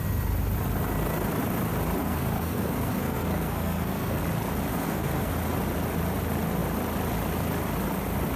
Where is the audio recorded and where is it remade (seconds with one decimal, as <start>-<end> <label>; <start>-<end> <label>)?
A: 0.0-2.0 recorded; 2.0-4.2 remade; 4.2-4.7 recorded; 4.7-5.3 remade; 5.3-8.4 recorded